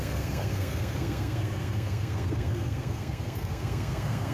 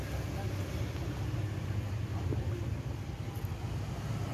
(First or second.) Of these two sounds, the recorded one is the second